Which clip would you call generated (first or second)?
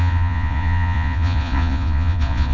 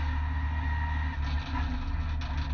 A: first